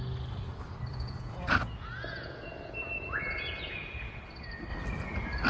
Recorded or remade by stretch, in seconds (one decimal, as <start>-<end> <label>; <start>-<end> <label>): 0.0-0.9 recorded; 0.9-4.2 remade; 4.2-5.5 recorded